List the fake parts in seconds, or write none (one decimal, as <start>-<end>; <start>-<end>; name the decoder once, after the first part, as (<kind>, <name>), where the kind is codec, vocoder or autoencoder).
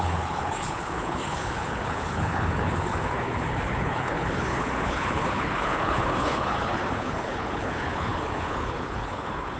0.0-9.6 (codec, HILCodec)